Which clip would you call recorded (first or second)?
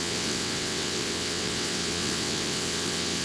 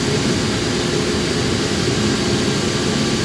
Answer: second